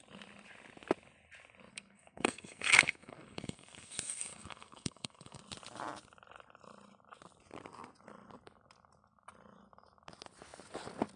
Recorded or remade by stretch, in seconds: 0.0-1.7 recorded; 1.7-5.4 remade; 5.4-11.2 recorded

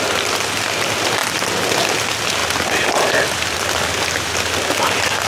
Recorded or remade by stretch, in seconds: 0.0-5.3 recorded

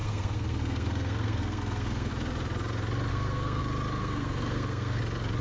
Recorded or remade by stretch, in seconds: 0.0-2.1 remade; 2.1-3.1 recorded; 3.1-3.6 remade; 3.6-4.0 recorded; 4.0-5.0 remade; 5.0-5.4 recorded

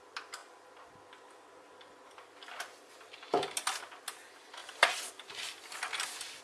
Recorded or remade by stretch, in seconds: 0.0-6.4 recorded

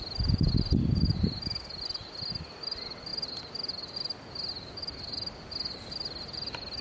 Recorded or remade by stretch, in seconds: 0.0-6.8 recorded

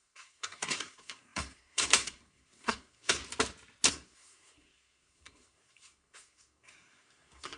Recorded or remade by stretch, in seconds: 0.0-3.2 remade; 3.2-3.9 recorded; 3.9-7.6 remade